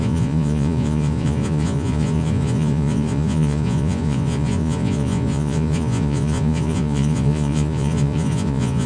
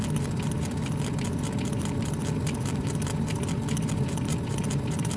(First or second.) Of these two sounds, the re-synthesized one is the first